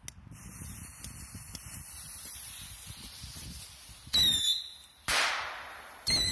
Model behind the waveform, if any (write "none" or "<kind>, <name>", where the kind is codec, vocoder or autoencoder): none